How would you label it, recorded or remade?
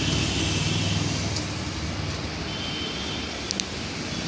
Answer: recorded